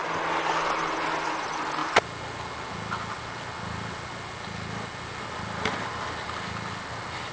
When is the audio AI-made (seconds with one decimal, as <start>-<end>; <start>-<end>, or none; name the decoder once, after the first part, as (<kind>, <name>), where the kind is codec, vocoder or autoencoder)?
none